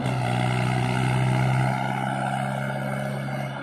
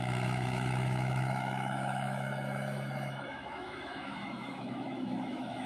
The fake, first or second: second